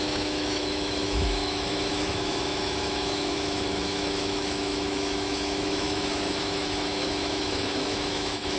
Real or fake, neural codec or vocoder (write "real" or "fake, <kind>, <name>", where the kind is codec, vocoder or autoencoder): fake, autoencoder, DAC-VAE